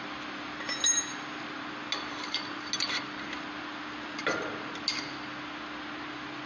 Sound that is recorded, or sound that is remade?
recorded